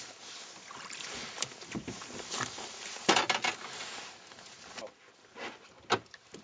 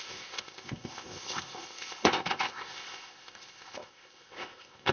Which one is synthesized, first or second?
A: second